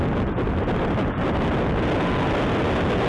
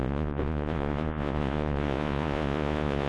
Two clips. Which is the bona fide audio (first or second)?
first